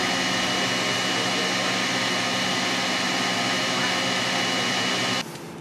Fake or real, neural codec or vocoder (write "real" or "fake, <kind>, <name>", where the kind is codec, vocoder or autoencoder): real